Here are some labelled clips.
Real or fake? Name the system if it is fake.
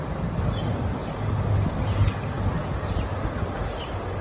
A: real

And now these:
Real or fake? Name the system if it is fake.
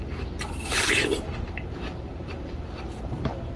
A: fake, vocoder, BigVGAN v2